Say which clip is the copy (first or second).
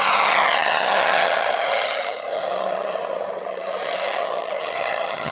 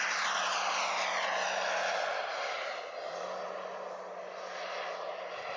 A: first